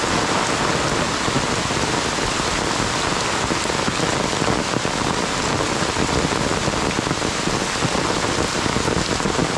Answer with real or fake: real